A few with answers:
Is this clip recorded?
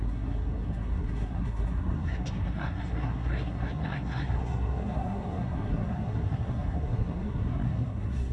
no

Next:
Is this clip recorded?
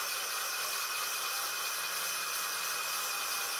yes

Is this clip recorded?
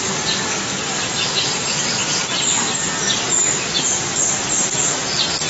yes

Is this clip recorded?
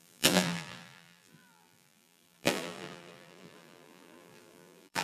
no